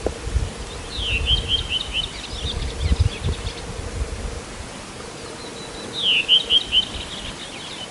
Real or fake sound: real